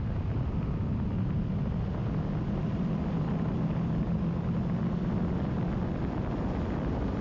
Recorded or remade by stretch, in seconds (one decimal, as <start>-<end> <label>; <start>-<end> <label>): 0.0-7.2 recorded